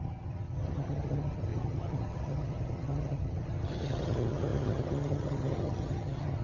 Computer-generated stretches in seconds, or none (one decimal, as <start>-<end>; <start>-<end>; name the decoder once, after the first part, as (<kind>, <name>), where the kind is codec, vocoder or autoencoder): 0.0-6.4 (vocoder, HiFi-GAN)